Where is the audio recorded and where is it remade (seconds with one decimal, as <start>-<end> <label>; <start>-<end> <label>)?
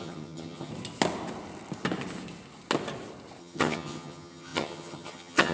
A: 0.0-0.7 remade; 0.7-3.4 recorded; 3.4-5.5 remade